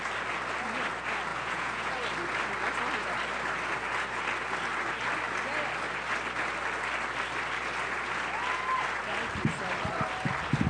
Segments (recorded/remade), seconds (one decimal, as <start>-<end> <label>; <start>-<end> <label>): 0.0-1.3 recorded; 1.3-1.9 remade; 1.9-10.7 recorded